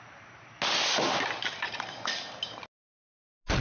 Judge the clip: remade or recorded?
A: recorded